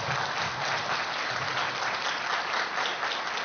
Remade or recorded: recorded